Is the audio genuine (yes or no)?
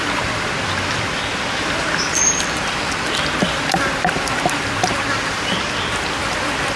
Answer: no